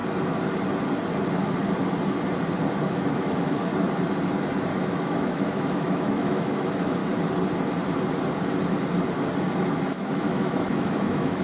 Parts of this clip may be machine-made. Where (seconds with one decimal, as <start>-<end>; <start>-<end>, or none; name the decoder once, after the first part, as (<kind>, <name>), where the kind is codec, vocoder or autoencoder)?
2.9-3.7 (autoencoder, DAC-VAE); 4.8-7.0; 9.9-11.4